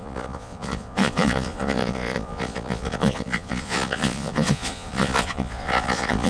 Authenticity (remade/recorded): remade